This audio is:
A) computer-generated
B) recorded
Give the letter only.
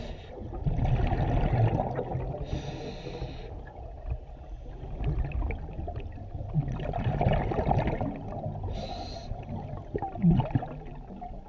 B